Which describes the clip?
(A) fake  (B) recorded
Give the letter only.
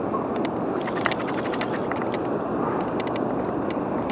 B